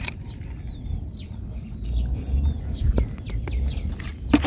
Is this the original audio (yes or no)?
yes